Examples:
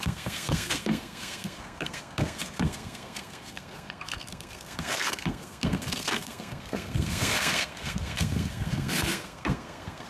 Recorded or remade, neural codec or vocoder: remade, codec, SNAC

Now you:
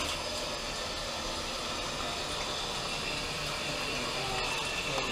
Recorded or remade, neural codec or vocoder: recorded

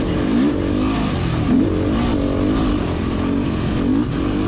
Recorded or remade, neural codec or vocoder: recorded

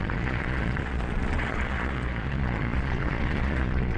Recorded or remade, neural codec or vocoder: remade, vocoder, Vocos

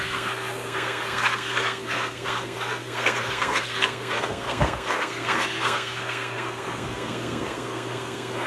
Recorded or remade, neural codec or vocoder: remade, codec, SNAC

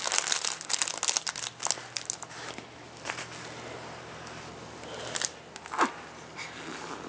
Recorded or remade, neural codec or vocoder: recorded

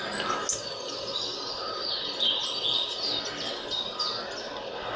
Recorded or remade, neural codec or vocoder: recorded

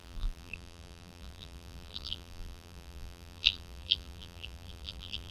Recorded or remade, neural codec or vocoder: remade, vocoder, BigVGAN v2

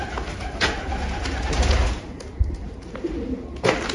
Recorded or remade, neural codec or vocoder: recorded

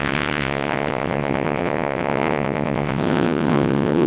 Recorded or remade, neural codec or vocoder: remade, vocoder, WaveNeXt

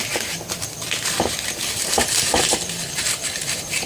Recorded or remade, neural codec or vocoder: remade, vocoder, BigVGAN v2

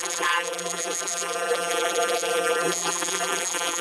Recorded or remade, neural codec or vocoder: remade, vocoder, BigVGAN v2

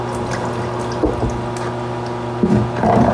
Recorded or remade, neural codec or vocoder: recorded